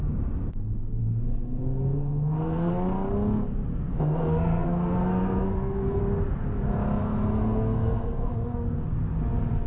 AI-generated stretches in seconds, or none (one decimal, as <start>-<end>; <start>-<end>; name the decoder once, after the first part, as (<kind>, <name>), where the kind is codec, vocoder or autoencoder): 1.0-2.7 (codec, SNAC); 3.7-6.0; 7.0-8.3